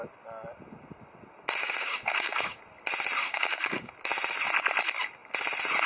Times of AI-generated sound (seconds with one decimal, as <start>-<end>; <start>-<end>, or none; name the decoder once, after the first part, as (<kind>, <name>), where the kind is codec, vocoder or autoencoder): 1.6-2.6 (codec, DAC); 3.2-3.9